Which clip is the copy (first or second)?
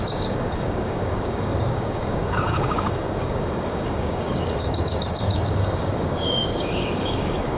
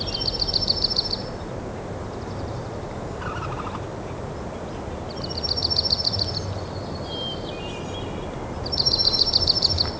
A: first